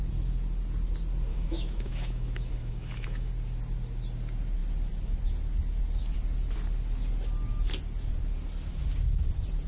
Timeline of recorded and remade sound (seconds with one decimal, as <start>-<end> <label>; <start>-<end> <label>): 0.0-1.3 recorded; 1.3-3.3 remade; 3.3-9.7 recorded